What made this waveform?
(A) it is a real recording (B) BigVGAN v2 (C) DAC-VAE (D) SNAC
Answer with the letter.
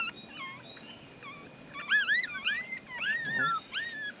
A